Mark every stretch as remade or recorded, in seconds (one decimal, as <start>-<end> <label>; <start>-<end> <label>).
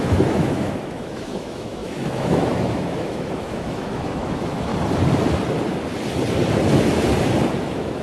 0.0-4.7 remade; 4.7-7.6 recorded; 7.6-8.0 remade